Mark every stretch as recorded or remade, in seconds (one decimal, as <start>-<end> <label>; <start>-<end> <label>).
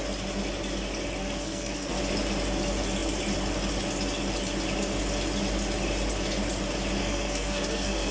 0.0-1.2 recorded; 1.2-2.0 remade; 2.0-7.0 recorded; 7.0-8.1 remade